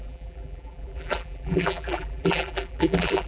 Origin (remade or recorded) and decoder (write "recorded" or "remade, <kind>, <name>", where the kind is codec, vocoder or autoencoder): remade, vocoder, BigVGAN v2